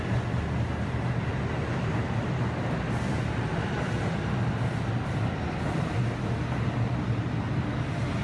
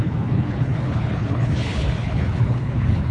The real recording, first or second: first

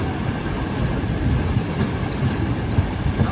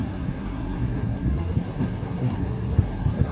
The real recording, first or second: first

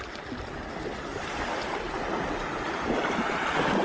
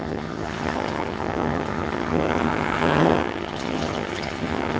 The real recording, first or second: first